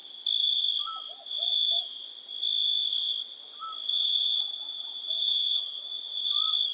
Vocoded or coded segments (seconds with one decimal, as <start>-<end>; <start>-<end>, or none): 3.9-6.3